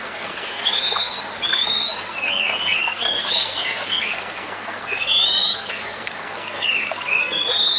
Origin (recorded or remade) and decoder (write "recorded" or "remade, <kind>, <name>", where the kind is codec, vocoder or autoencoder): remade, codec, SNAC